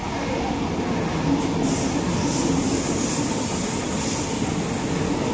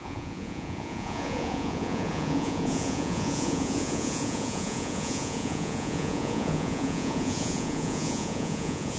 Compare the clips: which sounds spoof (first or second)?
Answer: second